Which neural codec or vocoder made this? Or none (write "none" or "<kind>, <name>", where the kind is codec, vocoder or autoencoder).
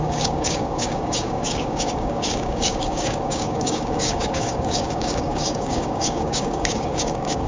codec, DAC